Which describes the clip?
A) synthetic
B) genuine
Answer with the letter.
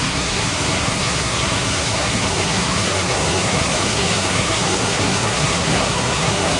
A